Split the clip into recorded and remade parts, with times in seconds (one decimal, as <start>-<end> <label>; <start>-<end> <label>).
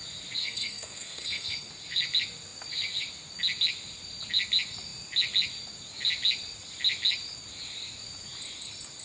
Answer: 0.0-0.4 recorded; 0.4-1.7 remade; 1.7-9.0 recorded